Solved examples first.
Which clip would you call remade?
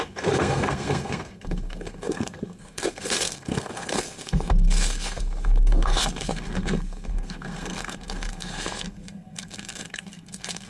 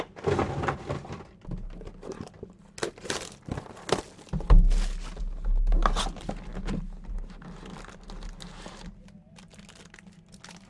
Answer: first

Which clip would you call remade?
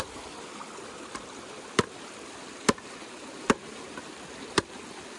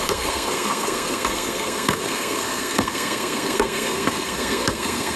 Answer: second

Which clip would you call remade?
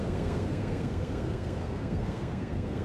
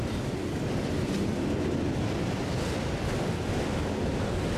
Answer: first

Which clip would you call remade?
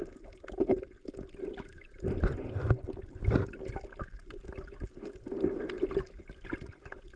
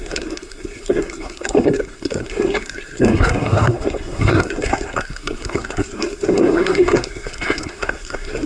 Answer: second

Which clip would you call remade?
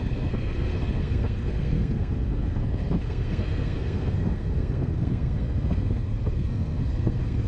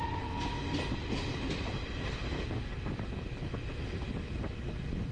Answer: first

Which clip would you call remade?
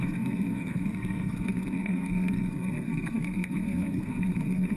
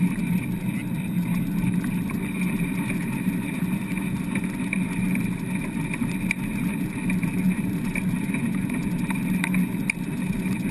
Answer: first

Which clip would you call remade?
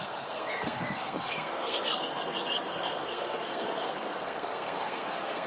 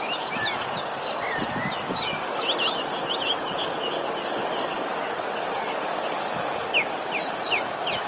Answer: first